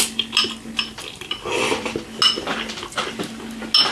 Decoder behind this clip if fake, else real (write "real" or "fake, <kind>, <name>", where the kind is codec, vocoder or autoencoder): real